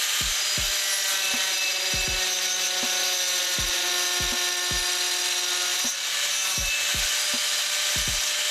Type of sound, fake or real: real